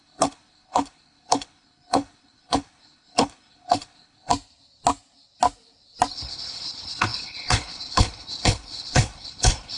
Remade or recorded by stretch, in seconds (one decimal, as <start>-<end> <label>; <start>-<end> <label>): 0.0-4.3 remade; 4.3-6.1 recorded; 6.1-9.8 remade